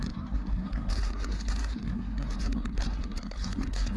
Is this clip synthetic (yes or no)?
yes